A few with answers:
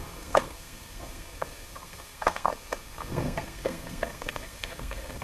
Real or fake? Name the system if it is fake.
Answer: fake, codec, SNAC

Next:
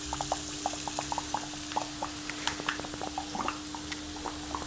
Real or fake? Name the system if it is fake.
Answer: real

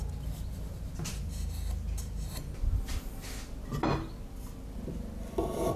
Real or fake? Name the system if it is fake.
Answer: real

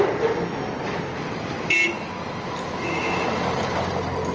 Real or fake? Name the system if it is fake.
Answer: real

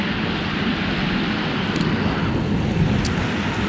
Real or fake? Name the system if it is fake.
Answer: real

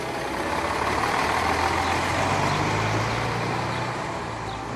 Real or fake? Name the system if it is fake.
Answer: real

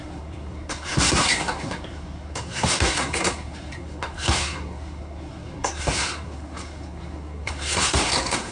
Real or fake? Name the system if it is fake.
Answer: fake, codec, SNAC